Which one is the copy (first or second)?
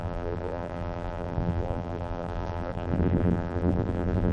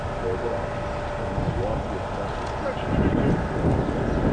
first